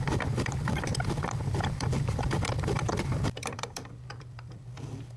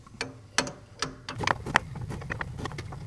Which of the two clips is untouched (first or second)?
second